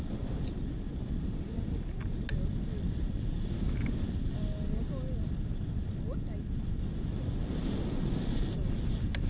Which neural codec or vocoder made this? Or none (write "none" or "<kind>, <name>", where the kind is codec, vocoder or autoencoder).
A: none